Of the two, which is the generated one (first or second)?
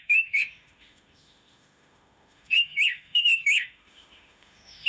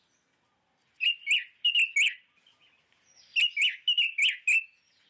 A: first